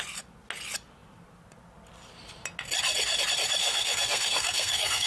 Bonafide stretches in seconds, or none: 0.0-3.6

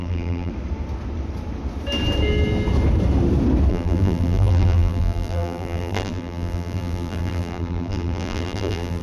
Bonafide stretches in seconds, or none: 0.5-3.7

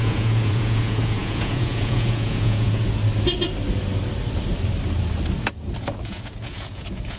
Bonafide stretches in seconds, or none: 2.8-5.8

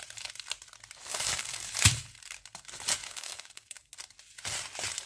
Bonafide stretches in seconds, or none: 0.0-1.1; 1.7-3.0; 3.9-5.1

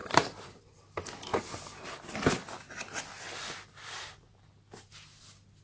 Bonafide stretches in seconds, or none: 0.6-1.3; 1.9-5.6

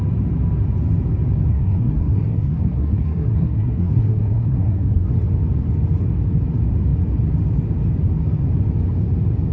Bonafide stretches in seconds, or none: 0.0-1.5; 5.1-9.5